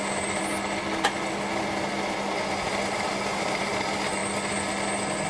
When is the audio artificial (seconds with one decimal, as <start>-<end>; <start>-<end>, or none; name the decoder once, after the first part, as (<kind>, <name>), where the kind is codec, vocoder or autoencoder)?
none